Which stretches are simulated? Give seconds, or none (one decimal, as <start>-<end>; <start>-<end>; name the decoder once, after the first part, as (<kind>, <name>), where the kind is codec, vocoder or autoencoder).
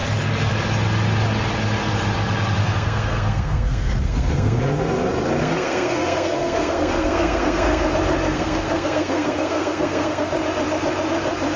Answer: 2.6-4.6 (codec, SNAC); 5.4-7.9; 8.3-10.3